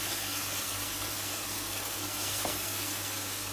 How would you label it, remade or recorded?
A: remade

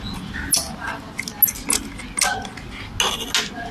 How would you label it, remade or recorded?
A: recorded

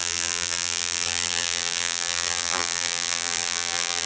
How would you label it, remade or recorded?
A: remade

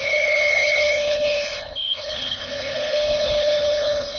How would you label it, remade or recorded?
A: remade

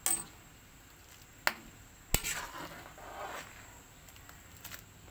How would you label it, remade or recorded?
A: recorded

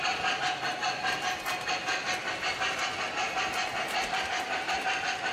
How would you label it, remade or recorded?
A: recorded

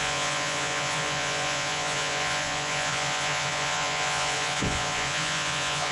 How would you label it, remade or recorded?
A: remade